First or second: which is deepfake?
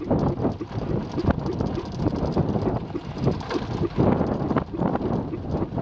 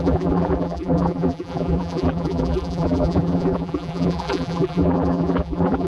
second